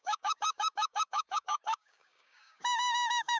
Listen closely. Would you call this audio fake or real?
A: fake